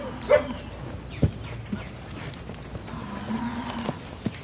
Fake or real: real